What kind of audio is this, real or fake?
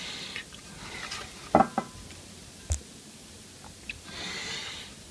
real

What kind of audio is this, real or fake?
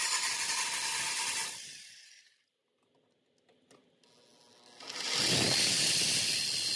real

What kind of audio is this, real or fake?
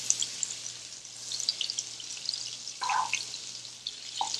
real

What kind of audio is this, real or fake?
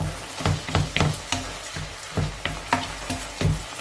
real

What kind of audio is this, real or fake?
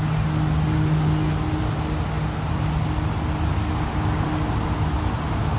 real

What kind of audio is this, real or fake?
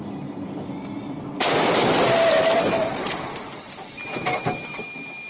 fake